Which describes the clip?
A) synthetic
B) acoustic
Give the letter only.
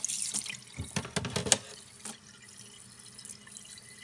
B